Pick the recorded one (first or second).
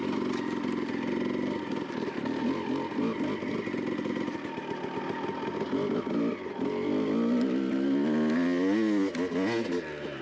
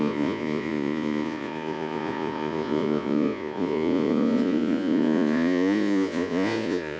first